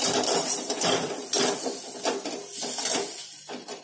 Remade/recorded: recorded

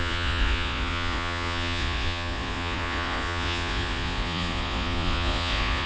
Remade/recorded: remade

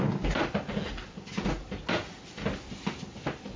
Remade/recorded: recorded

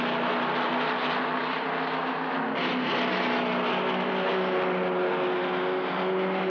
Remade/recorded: recorded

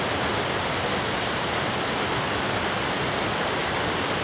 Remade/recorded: recorded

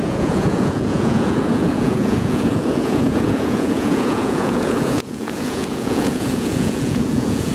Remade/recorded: remade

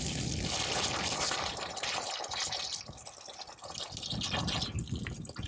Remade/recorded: recorded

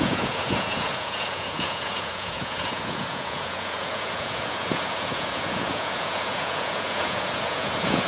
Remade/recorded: remade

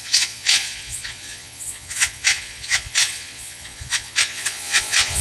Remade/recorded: remade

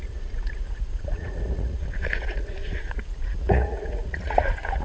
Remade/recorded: remade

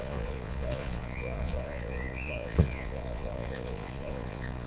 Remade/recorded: remade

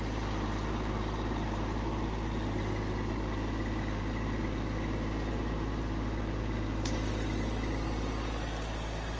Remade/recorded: recorded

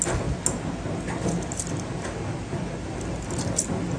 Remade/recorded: recorded